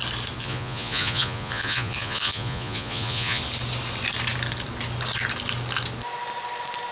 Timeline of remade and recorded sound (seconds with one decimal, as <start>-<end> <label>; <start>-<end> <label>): 0.0-0.4 recorded; 0.4-3.4 remade; 3.4-6.9 recorded